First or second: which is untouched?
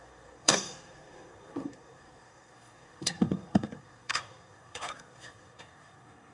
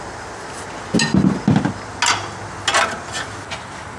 second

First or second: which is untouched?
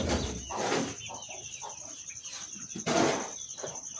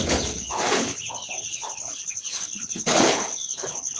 first